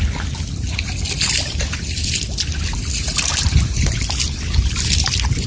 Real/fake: real